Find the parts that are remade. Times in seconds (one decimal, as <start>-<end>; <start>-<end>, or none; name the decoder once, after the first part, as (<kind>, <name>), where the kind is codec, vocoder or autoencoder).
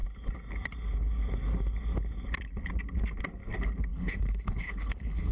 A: 3.9-5.3 (codec, HILCodec)